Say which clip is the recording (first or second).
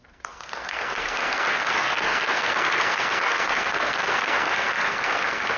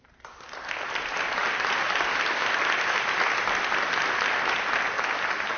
second